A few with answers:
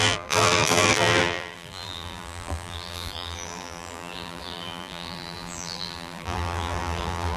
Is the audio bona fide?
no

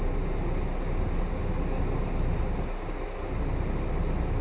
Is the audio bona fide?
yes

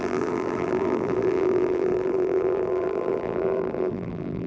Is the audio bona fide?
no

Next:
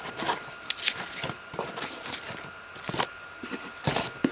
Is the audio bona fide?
yes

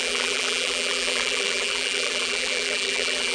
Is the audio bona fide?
no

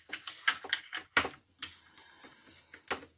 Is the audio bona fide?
yes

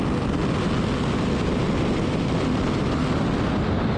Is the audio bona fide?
yes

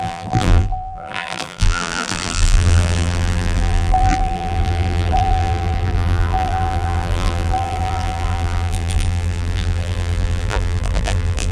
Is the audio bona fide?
no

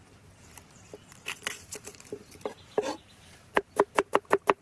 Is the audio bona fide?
no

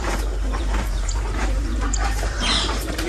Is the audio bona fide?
no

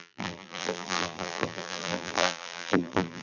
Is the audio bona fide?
no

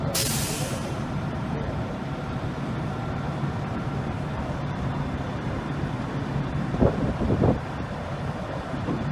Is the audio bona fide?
no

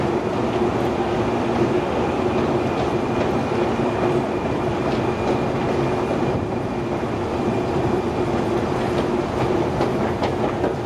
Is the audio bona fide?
yes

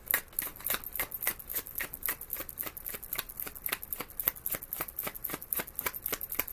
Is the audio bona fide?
yes